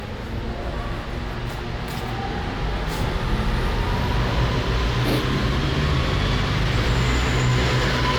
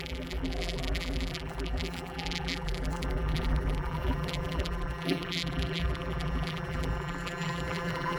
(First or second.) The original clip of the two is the first